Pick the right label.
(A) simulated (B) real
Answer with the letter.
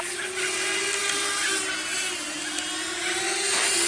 B